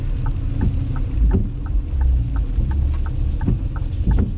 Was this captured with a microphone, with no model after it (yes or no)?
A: yes